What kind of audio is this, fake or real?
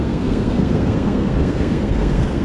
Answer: fake